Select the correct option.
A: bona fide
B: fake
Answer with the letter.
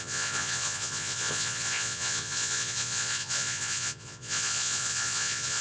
B